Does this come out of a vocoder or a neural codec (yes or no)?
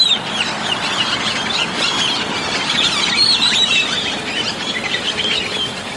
yes